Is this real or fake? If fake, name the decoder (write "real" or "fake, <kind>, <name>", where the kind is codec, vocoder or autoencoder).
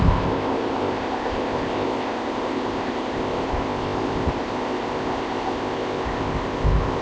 fake, codec, ZipCodec